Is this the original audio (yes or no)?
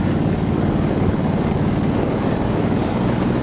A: no